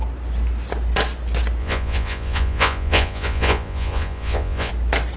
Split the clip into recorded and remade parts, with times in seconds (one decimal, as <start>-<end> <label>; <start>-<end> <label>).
0.0-1.6 recorded; 1.6-4.7 remade; 4.7-5.2 recorded